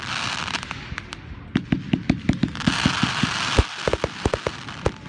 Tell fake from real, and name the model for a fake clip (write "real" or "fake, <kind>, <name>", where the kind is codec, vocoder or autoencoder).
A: real